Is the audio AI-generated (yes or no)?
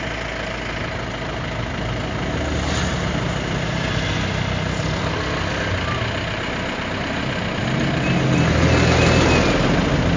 no